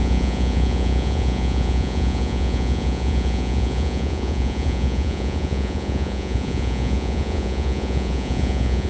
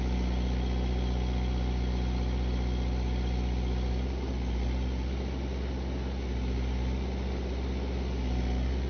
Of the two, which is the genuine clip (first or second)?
second